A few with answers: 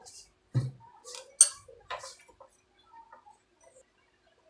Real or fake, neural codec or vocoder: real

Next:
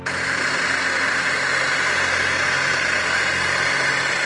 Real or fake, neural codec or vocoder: real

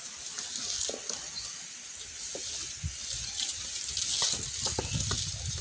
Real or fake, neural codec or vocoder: real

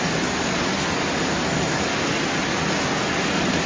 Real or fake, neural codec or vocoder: real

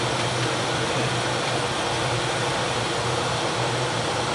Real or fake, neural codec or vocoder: real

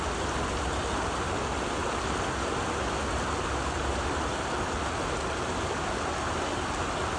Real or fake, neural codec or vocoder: real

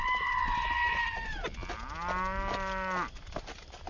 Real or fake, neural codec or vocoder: real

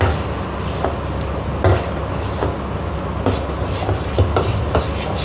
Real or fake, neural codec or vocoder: real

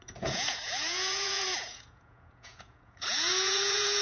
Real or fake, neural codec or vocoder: fake, vocoder, Vocos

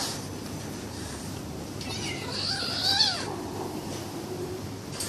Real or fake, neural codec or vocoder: fake, vocoder, BigVGAN v2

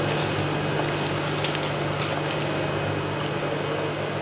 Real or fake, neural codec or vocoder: real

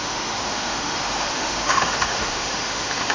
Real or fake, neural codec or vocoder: fake, autoencoder, DAC-VAE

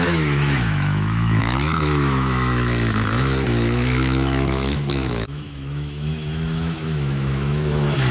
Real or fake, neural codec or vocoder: fake, autoencoder, DAC-VAE